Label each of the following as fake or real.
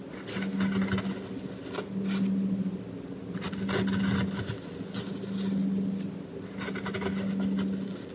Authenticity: real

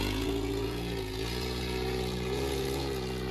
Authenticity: fake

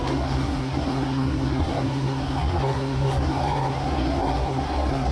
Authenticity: fake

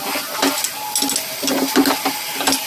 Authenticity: real